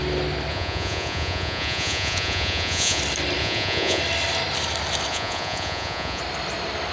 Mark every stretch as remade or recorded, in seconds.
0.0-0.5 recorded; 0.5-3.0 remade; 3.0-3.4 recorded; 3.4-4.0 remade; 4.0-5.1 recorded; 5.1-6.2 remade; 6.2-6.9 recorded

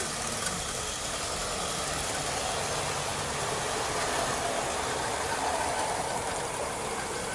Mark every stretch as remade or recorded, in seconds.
0.0-7.3 recorded